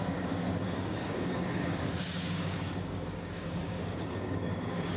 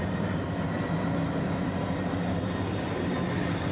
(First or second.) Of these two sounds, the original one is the second